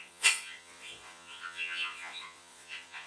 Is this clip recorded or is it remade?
remade